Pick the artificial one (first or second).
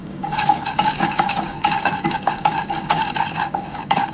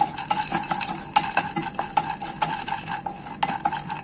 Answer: first